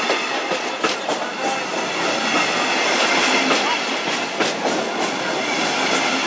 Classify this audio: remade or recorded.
recorded